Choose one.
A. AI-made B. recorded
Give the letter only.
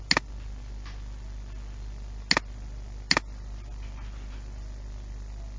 B